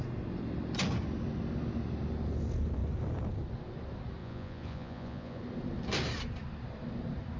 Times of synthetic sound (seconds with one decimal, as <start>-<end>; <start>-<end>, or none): 4.2-5.4